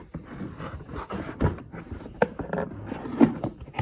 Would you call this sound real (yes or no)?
yes